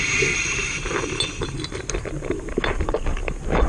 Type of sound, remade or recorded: recorded